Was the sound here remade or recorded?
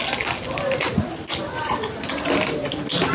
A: recorded